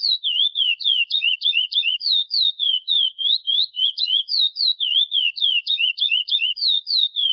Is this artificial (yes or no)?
yes